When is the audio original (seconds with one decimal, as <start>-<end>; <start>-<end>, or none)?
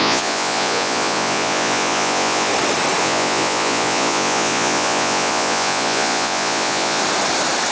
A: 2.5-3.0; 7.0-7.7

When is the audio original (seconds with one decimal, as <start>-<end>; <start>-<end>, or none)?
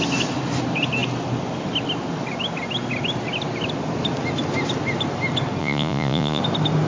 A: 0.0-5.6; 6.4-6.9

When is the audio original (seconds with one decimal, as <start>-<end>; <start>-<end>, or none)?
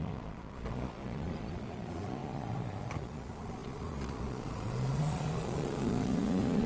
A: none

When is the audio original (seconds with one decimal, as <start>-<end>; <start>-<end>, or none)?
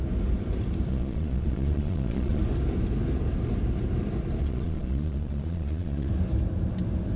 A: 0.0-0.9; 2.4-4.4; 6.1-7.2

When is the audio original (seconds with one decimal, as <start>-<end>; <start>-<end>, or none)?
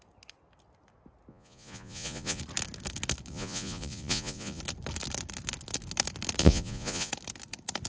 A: 0.0-1.3; 2.4-3.3; 4.6-6.4; 7.1-7.9